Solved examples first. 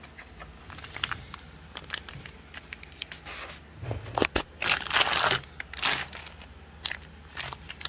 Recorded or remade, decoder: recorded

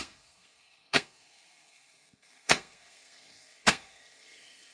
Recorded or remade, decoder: remade, codec, SNAC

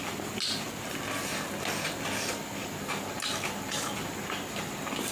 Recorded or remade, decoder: recorded